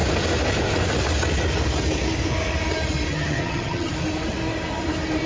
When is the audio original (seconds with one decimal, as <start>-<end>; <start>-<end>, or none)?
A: 0.0-3.1; 3.9-5.3